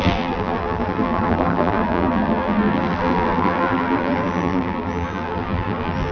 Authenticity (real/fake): fake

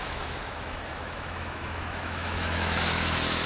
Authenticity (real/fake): fake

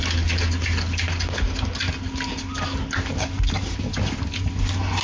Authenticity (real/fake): real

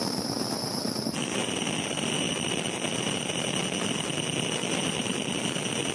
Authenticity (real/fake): fake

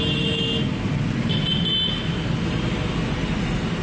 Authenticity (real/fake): real